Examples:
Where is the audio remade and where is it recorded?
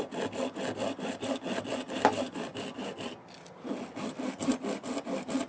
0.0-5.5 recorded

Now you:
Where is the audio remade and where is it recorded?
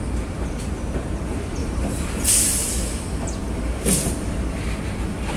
0.0-1.6 recorded; 1.6-2.3 remade; 2.3-5.4 recorded